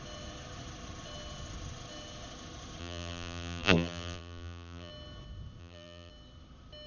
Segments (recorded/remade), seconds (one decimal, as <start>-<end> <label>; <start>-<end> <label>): 0.0-2.8 recorded; 2.8-4.9 remade; 4.9-5.6 recorded; 5.6-6.1 remade; 6.1-6.9 recorded